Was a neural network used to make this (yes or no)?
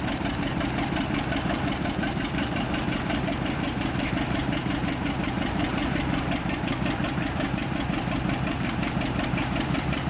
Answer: yes